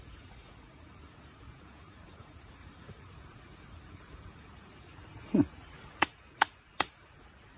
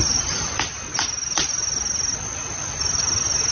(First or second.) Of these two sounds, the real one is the second